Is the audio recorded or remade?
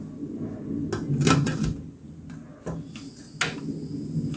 recorded